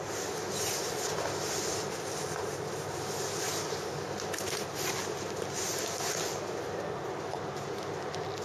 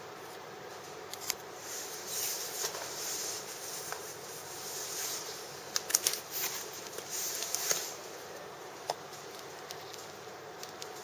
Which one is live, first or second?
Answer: first